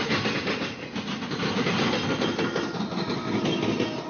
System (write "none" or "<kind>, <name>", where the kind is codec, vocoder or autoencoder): none